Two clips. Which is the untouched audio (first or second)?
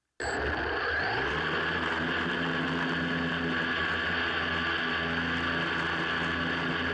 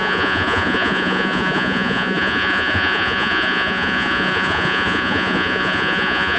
first